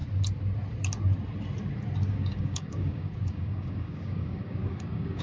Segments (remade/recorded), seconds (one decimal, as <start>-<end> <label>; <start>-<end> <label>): 0.0-2.1 recorded; 2.1-5.2 remade